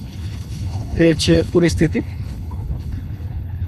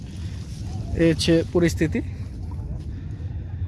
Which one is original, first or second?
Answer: second